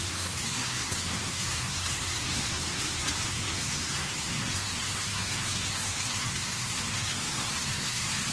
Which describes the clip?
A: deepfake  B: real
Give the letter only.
A